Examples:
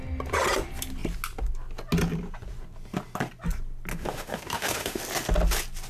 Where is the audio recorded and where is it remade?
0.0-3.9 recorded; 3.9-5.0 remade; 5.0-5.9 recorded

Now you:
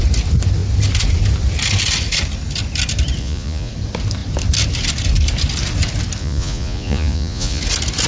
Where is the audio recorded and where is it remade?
0.0-3.2 recorded; 3.2-3.7 remade; 3.7-6.2 recorded; 6.2-7.6 remade; 7.6-8.1 recorded

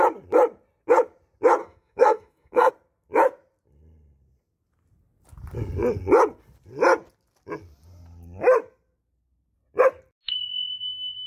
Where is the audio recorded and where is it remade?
0.0-1.6 recorded; 1.6-2.7 remade; 2.7-11.3 recorded

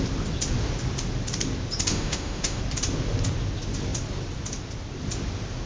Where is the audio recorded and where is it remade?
0.0-1.9 recorded; 1.9-2.6 remade; 2.6-5.7 recorded

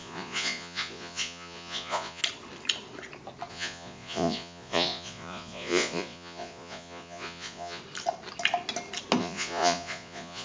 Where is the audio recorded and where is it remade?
0.0-2.2 remade; 2.2-3.5 recorded; 3.5-7.8 remade; 7.8-9.2 recorded; 9.2-10.4 remade

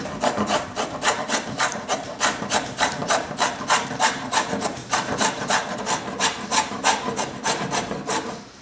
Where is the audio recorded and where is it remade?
0.0-8.6 remade

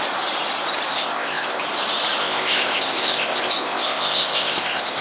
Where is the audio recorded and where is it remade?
0.0-0.9 recorded; 0.9-1.6 remade; 1.6-2.2 recorded; 2.2-5.0 remade

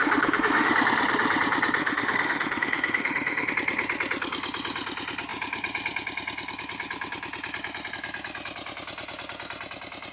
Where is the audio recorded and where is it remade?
0.0-0.7 remade; 0.7-1.8 recorded; 1.8-3.5 remade; 3.5-10.1 recorded